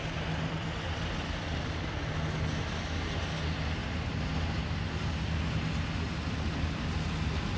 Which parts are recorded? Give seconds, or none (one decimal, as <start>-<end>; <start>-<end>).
0.0-7.6